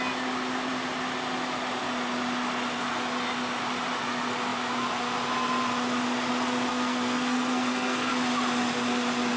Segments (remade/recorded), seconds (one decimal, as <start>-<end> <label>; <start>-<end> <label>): 0.0-6.7 recorded; 6.7-8.1 remade; 8.1-9.4 recorded